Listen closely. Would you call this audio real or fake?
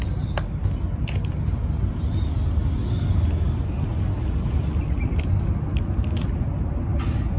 real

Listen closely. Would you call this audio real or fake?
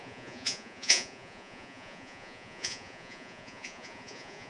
fake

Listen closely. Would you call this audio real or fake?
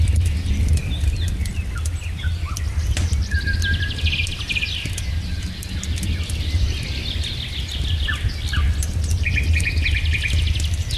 real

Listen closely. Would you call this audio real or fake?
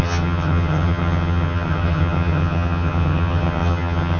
fake